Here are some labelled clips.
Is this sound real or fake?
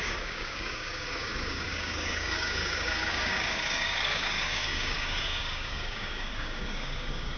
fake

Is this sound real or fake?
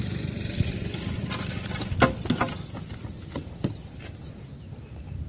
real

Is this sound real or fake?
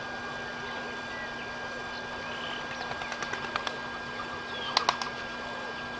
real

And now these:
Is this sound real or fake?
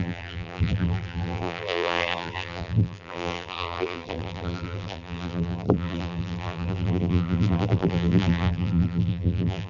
fake